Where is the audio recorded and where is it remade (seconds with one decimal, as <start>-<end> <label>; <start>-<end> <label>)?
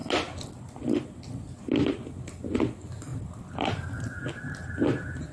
0.0-3.1 recorded; 3.1-4.6 remade; 4.6-5.3 recorded